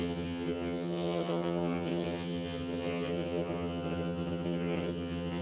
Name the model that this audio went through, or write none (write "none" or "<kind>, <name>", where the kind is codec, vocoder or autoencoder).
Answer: vocoder, HiFi-GAN